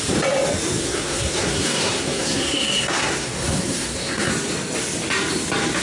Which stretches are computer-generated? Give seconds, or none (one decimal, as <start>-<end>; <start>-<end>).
0.8-4.3